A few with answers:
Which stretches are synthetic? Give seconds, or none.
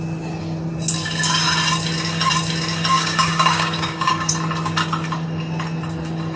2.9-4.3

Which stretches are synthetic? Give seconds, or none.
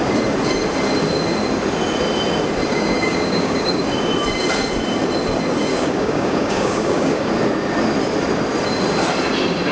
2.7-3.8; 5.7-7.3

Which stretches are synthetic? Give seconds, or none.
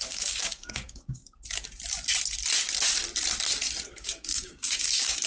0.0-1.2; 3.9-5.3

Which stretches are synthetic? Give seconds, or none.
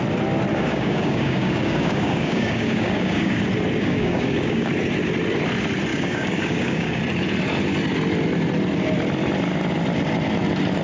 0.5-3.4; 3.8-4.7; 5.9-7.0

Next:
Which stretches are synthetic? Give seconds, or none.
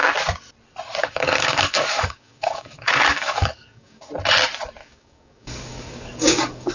1.0-4.1; 4.8-6.7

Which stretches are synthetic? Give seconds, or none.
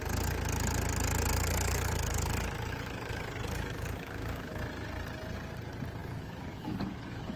1.3-4.6; 6.0-7.4